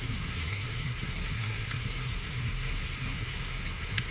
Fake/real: fake